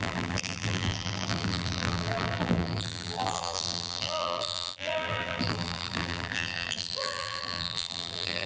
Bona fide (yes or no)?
no